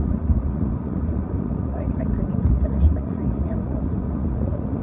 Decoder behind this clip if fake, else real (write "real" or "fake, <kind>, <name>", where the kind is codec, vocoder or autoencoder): fake, vocoder, Vocos